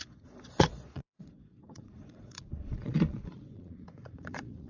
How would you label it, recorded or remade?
remade